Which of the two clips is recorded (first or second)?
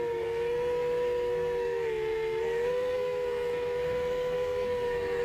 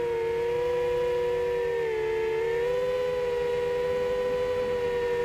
second